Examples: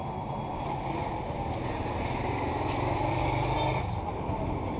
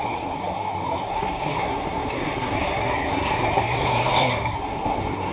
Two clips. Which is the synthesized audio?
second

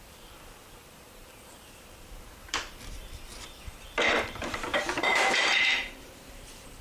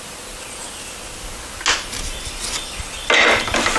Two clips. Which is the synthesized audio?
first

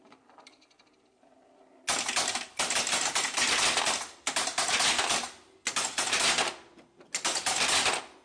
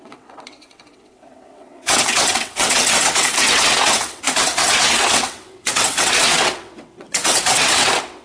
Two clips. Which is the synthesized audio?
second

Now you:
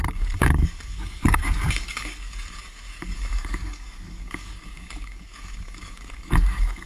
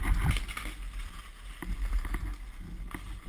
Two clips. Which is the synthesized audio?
first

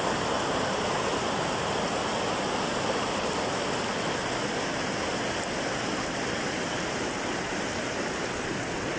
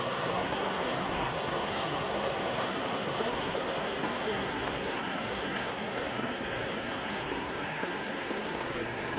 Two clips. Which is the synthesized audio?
second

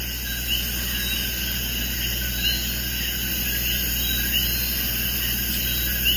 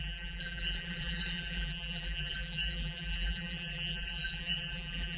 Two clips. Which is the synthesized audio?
second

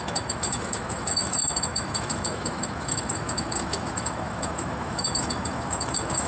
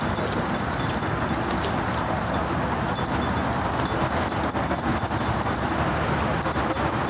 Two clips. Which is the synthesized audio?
first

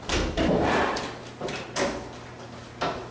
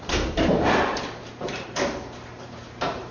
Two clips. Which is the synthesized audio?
second